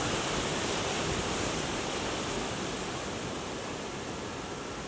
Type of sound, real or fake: real